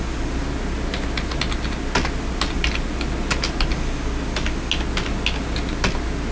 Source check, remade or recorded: recorded